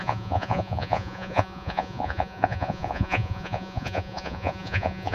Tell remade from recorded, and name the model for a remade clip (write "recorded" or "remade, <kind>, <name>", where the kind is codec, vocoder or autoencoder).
remade, vocoder, Vocos